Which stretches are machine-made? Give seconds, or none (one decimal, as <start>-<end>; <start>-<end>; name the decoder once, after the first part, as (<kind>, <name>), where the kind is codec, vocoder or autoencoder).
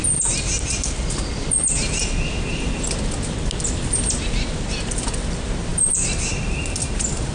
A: none